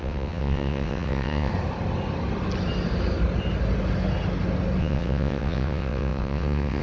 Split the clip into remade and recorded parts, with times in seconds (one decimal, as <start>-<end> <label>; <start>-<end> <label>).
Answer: 0.0-1.5 remade; 1.5-4.8 recorded; 4.8-6.8 remade